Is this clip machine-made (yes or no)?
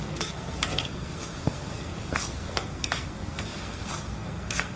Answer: yes